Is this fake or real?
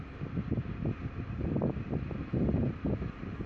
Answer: real